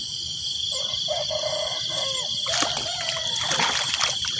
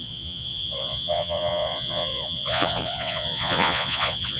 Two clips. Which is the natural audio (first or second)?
first